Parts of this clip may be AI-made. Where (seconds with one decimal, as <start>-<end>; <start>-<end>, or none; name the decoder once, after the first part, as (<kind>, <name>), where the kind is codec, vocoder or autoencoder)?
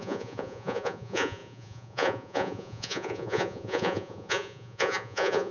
0.0-5.5 (vocoder, Vocos)